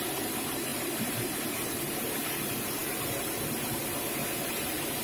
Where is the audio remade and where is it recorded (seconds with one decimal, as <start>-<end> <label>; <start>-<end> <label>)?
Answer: 0.0-3.8 remade; 3.8-4.5 recorded; 4.5-5.0 remade